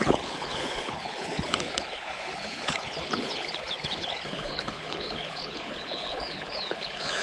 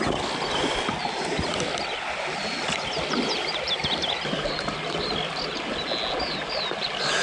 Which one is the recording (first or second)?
second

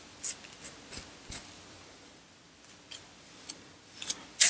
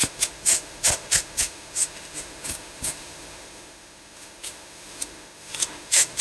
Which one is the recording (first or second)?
first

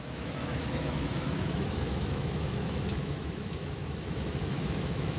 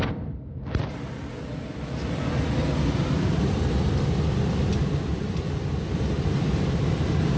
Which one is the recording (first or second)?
second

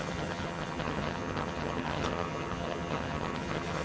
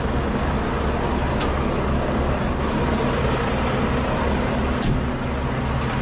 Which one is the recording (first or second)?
second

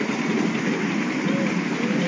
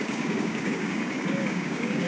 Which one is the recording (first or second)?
first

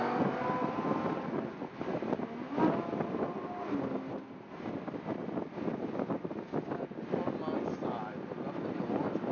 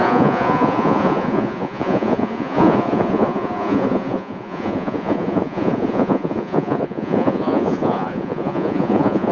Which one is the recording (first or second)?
first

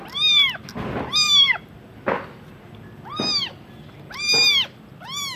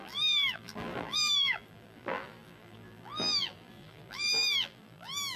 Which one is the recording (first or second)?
first